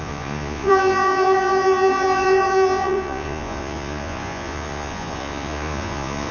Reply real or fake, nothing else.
fake